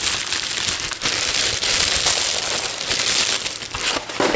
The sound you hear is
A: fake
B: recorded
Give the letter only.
B